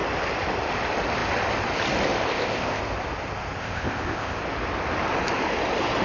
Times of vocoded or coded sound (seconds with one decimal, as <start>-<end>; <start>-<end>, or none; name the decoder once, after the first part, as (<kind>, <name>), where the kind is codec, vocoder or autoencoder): 2.3-2.8 (codec, ZipCodec); 3.6-4.4